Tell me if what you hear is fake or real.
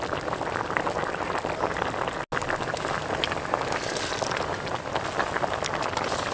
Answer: real